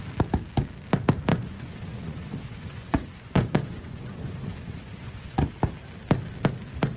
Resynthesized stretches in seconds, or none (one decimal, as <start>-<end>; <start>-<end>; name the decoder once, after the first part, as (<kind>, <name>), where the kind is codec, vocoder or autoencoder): 1.3-5.5 (vocoder, Vocos)